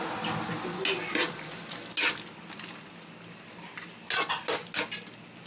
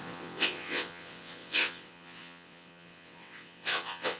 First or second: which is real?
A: first